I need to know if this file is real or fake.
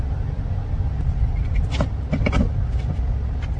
real